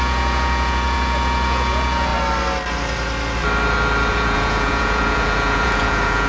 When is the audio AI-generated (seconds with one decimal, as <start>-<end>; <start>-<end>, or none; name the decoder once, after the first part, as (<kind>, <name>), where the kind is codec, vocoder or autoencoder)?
0.0-2.1 (vocoder, Vocos); 4.1-6.3